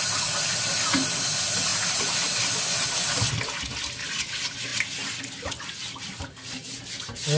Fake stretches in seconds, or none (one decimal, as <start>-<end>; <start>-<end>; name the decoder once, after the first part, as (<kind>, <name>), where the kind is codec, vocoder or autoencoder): none